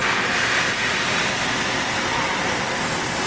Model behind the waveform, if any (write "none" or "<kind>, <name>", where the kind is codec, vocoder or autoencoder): none